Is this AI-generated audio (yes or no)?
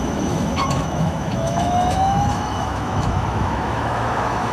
yes